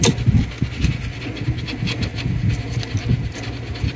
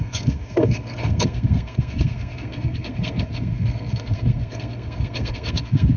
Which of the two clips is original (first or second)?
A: first